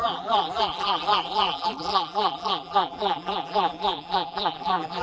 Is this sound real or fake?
fake